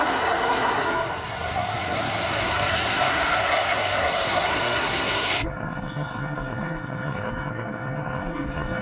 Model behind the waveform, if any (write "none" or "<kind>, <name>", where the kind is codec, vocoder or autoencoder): codec, SNAC